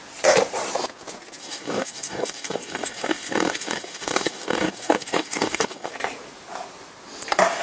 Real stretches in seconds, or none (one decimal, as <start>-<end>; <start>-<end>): 0.0-1.4; 5.9-7.6